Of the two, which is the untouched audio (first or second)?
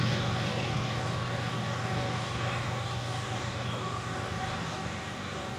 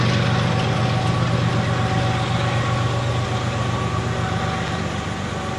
second